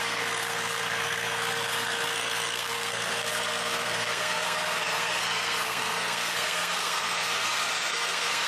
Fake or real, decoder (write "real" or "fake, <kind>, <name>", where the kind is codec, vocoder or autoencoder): fake, codec, SNAC